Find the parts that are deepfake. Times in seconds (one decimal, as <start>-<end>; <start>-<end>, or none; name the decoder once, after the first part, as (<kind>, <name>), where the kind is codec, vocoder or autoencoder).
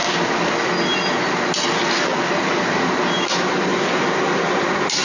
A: none